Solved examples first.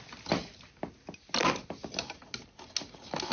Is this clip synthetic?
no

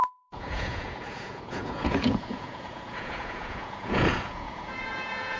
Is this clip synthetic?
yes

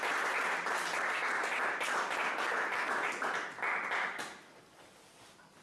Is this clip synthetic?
no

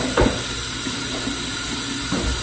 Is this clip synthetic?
no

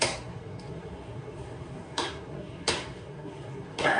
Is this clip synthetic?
yes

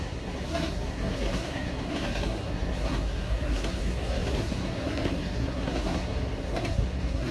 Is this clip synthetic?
yes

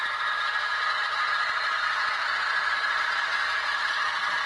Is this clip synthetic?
no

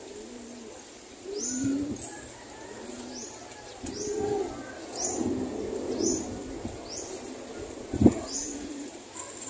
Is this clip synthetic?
no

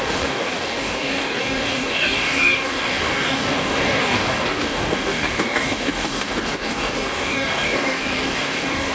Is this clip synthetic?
yes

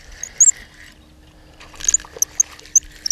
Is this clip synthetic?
no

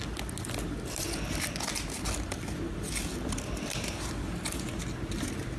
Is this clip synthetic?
no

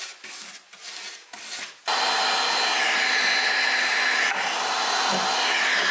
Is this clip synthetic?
no